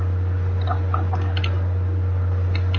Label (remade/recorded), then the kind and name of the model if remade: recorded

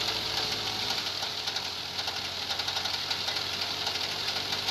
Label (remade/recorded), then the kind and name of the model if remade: recorded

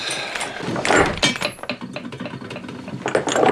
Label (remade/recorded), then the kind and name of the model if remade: recorded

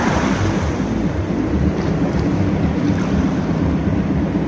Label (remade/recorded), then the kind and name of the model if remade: remade, vocoder, BigVGAN v2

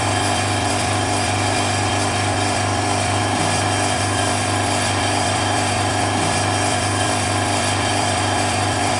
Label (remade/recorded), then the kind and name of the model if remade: remade, vocoder, BigVGAN v2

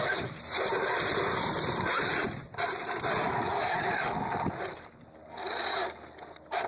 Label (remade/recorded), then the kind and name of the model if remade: recorded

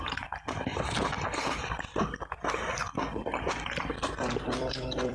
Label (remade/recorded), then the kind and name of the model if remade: remade, vocoder, BigVGAN v2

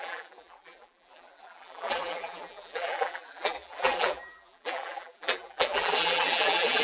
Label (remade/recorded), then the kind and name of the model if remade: remade, vocoder, BigVGAN v2